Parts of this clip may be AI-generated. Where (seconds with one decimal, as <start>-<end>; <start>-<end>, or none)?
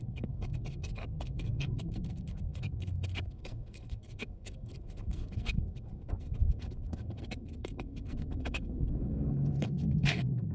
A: 0.0-10.5